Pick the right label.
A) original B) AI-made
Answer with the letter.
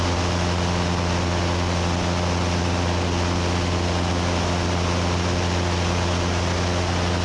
A